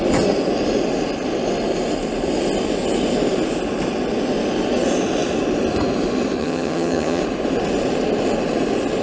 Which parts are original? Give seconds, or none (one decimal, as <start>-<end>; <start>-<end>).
0.0-6.4; 7.2-9.0